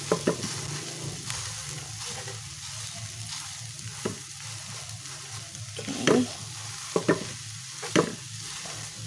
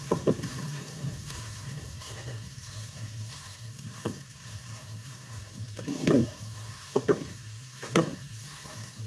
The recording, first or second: first